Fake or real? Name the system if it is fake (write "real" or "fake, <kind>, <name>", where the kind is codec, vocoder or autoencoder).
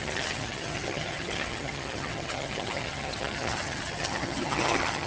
fake, vocoder, HiFi-GAN